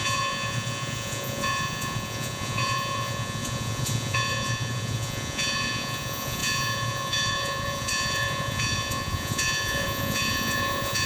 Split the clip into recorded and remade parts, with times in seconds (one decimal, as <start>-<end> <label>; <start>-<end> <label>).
0.0-11.1 remade